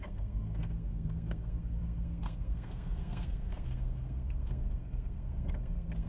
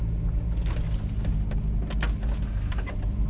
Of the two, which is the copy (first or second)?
first